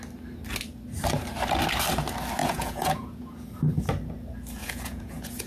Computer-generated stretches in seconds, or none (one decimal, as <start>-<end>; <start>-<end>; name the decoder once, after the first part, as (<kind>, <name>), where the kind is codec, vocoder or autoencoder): 2.4-3.5 (vocoder, Vocos); 4.6-5.5